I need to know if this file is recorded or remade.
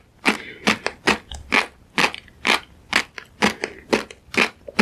recorded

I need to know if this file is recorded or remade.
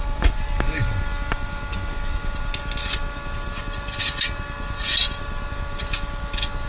recorded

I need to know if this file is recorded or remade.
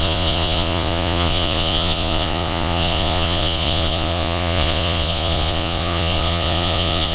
remade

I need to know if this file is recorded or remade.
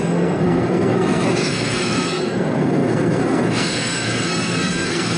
remade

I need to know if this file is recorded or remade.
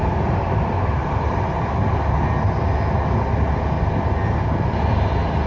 recorded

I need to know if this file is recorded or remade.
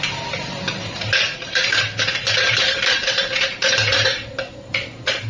remade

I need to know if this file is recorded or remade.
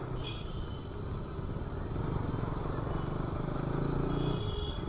recorded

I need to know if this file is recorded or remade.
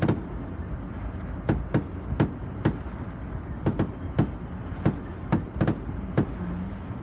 recorded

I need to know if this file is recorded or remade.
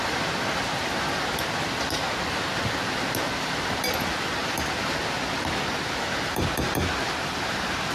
recorded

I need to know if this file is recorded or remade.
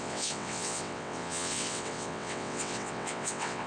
remade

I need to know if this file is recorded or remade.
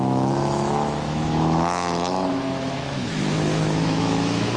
remade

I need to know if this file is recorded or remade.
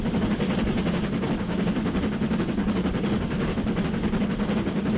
recorded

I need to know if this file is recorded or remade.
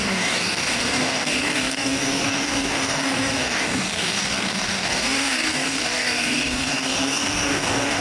remade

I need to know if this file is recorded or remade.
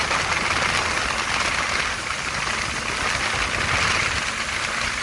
recorded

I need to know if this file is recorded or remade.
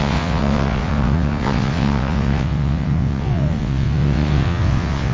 remade